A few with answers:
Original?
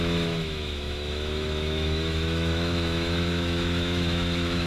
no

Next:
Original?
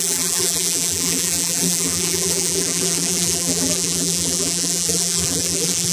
no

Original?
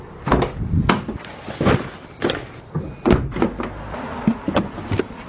yes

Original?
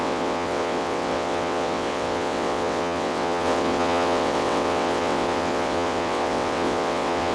no